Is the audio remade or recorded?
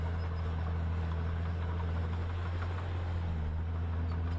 recorded